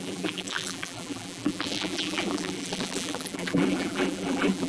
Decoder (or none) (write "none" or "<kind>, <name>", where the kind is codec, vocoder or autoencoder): vocoder, BigVGAN v2